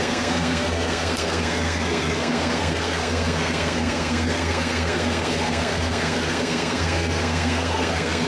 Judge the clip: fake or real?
fake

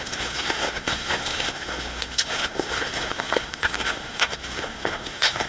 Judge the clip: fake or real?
fake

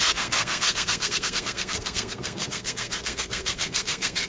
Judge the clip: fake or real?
fake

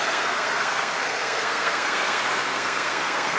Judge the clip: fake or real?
fake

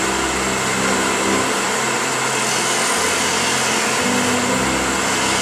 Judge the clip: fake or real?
real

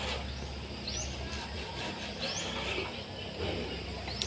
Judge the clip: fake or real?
real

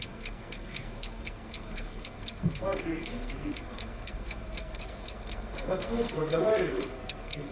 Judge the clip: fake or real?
fake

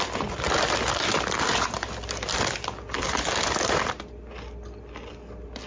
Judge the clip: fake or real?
real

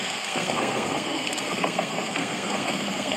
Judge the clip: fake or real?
fake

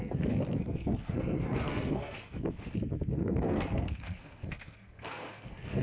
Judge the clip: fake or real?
fake